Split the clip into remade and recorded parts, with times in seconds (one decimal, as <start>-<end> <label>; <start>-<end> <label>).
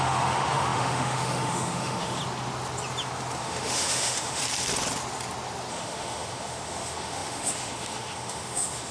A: 0.0-2.2 remade; 2.2-3.4 recorded; 3.4-4.4 remade; 4.4-5.7 recorded; 5.7-8.9 remade